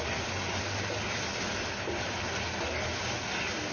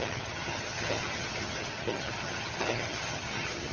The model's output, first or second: second